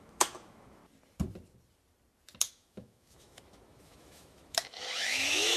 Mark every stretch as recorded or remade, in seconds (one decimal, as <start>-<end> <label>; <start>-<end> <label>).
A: 0.0-0.8 remade; 0.8-2.5 recorded; 2.5-5.6 remade